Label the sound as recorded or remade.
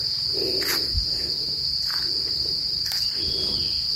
recorded